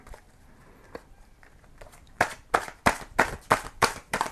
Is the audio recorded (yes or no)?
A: no